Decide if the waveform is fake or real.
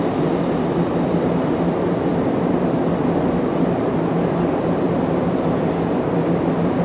real